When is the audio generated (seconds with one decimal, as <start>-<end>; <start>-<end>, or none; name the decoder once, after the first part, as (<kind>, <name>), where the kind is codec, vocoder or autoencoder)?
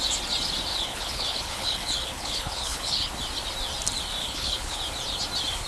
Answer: 0.7-3.1 (codec, HILCodec); 4.2-4.8